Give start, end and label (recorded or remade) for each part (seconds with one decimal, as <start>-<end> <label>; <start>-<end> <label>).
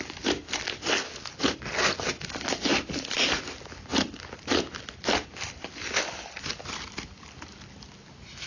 0.0-2.7 recorded; 2.7-3.4 remade; 3.4-8.5 recorded